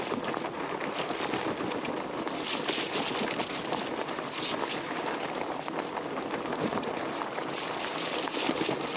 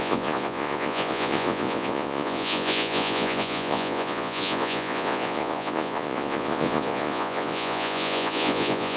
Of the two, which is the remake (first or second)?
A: second